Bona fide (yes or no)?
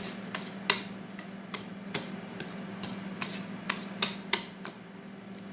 yes